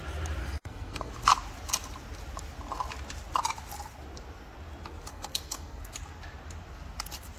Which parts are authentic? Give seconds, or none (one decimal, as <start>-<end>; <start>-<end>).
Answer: 0.0-0.4; 1.1-5.1; 5.8-7.4